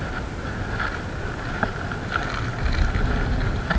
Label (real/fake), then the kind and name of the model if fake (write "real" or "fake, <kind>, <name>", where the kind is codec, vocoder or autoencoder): real